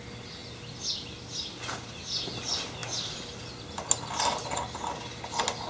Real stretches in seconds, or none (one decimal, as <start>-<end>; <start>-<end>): 0.0-5.7